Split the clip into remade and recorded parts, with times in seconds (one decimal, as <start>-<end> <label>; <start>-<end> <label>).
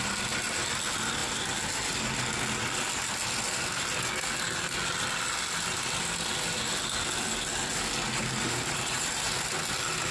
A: 0.0-8.2 recorded; 8.2-9.1 remade; 9.1-10.1 recorded